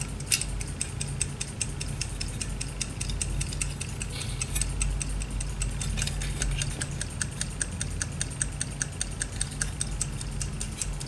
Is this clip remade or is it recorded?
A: recorded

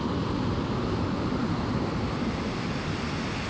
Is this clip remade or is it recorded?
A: recorded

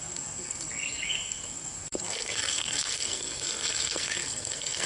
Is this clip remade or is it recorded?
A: remade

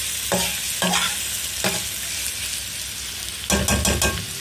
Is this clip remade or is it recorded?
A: recorded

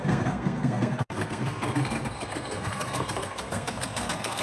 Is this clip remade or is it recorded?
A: remade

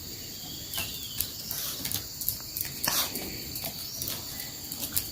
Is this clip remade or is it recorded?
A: recorded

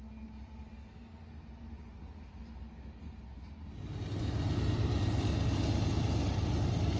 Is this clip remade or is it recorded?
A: recorded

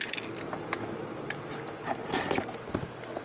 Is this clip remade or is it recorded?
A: recorded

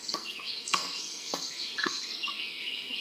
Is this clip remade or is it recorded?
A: remade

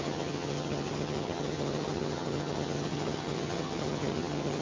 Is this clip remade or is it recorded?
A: remade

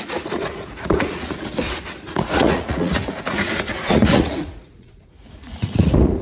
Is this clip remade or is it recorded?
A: remade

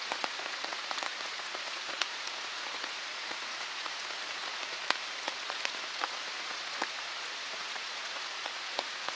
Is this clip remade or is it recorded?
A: remade